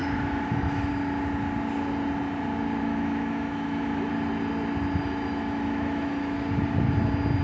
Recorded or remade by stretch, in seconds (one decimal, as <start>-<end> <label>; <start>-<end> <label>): 0.0-0.9 remade; 0.9-2.8 recorded; 2.8-4.1 remade; 4.1-5.0 recorded; 5.0-6.5 remade; 6.5-7.4 recorded